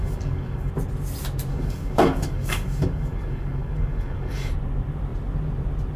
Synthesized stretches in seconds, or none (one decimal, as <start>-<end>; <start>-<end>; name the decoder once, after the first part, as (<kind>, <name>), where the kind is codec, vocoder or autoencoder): 0.0-0.7 (codec, DAC); 1.5-4.5

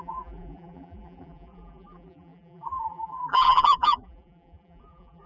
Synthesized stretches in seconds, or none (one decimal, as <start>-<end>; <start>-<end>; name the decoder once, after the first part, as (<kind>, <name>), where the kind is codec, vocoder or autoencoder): 0.0-5.3 (vocoder, BigVGAN v2)

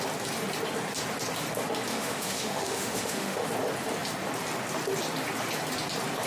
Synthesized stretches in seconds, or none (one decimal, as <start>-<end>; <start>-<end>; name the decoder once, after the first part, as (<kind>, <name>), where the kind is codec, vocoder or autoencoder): 1.9-3.5 (autoencoder, DAC-VAE)

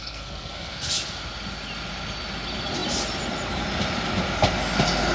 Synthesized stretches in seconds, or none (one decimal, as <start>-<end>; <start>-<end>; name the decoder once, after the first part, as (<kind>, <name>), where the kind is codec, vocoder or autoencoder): 0.0-0.9 (codec, SNAC)

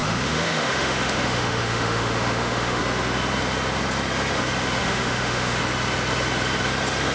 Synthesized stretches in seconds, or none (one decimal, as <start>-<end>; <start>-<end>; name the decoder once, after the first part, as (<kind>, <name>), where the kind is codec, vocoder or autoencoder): 0.0-2.8 (autoencoder, DAC-VAE); 4.8-5.6

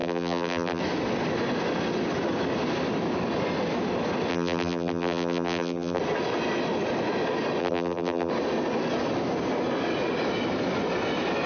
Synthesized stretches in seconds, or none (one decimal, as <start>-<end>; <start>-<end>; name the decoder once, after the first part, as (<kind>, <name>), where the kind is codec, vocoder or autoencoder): 0.0-0.8 (vocoder, BigVGAN v2); 4.3-6.0; 7.6-8.3

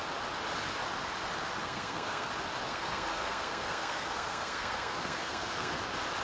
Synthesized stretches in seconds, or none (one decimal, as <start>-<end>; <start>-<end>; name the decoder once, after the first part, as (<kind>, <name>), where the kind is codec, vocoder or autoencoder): 1.6-2.3 (codec, SNAC); 2.7-5.8

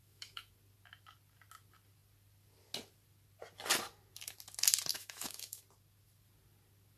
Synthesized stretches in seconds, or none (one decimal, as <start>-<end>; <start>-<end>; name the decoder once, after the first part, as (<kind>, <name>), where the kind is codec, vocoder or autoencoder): 0.0-0.5 (autoencoder, DAC-VAE); 4.9-5.6